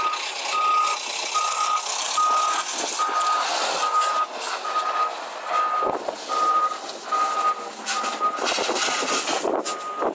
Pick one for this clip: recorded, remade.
recorded